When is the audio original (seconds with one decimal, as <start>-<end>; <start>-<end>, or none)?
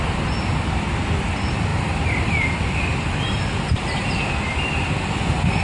0.0-1.7; 5.1-5.6